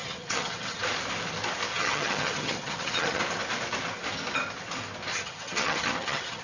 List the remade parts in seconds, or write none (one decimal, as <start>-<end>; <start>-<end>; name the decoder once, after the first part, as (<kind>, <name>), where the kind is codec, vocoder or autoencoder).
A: 0.0-0.8 (vocoder, HiFi-GAN); 1.7-3.2; 5.1-6.4